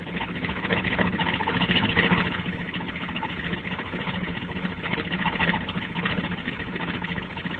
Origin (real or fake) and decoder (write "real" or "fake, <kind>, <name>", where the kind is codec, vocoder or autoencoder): fake, codec, HILCodec